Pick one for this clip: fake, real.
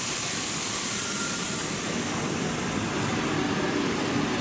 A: fake